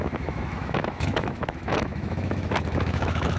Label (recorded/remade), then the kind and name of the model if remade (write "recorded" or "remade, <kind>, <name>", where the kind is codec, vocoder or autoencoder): remade, autoencoder, DAC-VAE